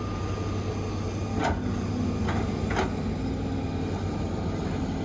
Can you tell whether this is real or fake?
real